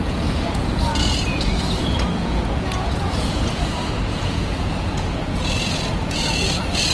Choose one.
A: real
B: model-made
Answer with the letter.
B